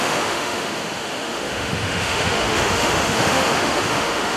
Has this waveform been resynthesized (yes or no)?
yes